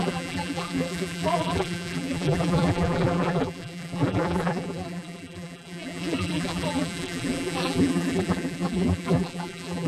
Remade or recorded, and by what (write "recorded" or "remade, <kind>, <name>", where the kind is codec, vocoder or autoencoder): remade, vocoder, BigVGAN v2